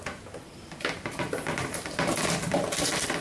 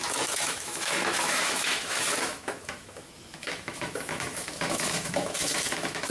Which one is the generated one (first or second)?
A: second